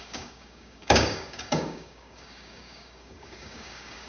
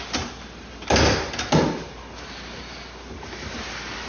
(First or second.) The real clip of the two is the second